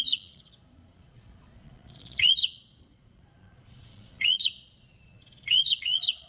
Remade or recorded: remade